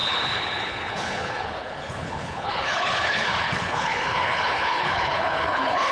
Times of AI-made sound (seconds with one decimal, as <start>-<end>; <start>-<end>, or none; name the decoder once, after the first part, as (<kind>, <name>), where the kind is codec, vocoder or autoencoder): 0.0-5.9 (codec, HILCodec)